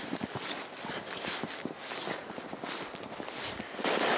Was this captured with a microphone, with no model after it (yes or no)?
yes